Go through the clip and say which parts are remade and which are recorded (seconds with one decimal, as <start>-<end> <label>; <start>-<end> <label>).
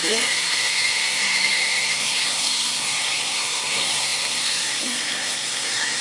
0.0-6.0 remade